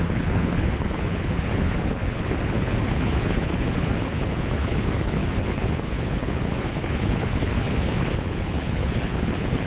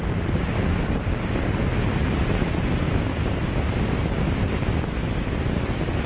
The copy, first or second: first